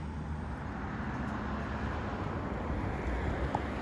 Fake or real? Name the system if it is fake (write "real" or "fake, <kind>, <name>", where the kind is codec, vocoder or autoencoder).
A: real